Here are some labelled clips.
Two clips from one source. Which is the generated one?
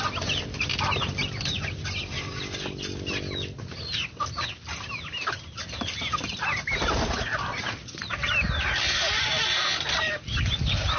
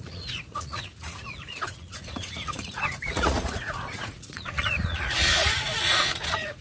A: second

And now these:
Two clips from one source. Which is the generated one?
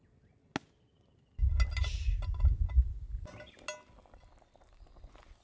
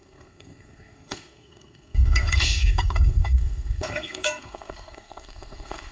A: second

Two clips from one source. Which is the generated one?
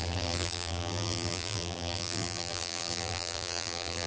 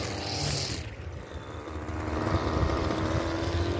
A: first